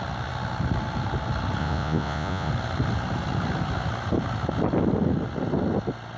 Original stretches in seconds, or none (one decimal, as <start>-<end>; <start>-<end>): 0.0-1.6; 2.5-6.2